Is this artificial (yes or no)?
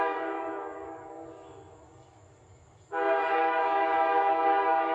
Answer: yes